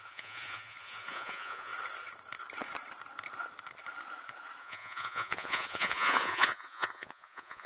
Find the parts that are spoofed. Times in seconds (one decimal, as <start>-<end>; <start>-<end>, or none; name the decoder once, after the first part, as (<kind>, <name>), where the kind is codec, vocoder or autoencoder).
0.0-1.7 (vocoder, Vocos); 4.6-7.7